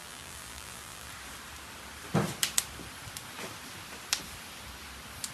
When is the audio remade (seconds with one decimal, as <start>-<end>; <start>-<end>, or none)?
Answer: 0.0-1.1